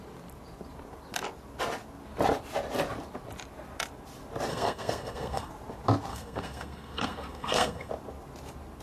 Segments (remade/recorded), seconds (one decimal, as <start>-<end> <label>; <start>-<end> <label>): 0.0-4.5 recorded; 4.5-5.5 remade; 5.5-6.1 recorded; 6.1-7.9 remade; 7.9-8.8 recorded